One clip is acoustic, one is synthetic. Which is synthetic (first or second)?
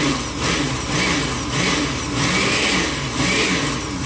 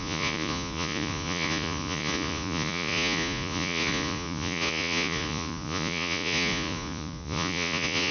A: second